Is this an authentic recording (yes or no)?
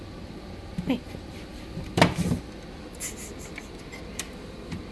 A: no